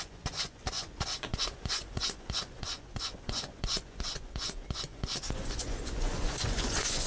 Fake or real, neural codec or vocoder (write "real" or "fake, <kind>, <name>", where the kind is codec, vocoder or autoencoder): fake, vocoder, Vocos